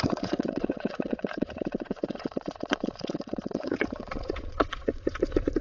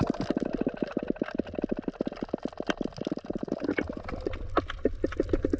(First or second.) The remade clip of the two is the first